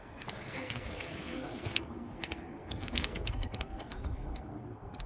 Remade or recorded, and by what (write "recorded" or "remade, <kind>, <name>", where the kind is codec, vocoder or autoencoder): remade, codec, SNAC